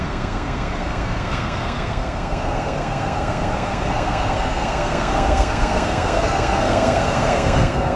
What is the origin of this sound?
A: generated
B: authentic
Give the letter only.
A